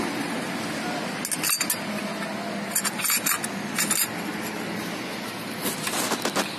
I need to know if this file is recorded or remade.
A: recorded